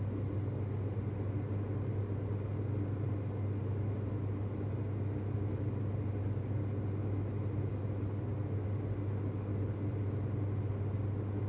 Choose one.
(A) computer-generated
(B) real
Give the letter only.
B